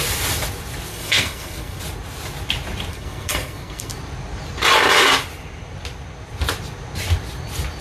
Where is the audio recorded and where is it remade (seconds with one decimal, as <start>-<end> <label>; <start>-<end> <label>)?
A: 0.0-0.9 recorded; 0.9-1.8 remade; 1.8-2.9 recorded; 2.9-3.9 remade; 3.9-7.8 recorded